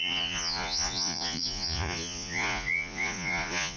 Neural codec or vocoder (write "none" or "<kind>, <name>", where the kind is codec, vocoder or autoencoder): vocoder, Vocos